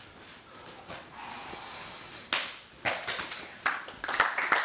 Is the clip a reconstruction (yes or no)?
no